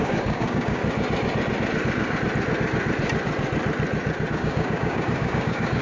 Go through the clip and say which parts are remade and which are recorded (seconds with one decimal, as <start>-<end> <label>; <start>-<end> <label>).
0.0-0.8 remade; 0.8-4.3 recorded; 4.3-5.8 remade